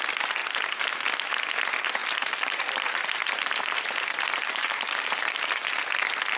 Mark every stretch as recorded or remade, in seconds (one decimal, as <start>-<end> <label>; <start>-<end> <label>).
0.0-0.4 recorded; 0.4-0.9 remade; 0.9-2.0 recorded; 2.0-5.8 remade; 5.8-6.4 recorded